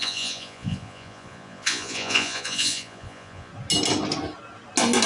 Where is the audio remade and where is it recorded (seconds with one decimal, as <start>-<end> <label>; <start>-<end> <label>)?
0.0-3.5 remade; 3.5-5.1 recorded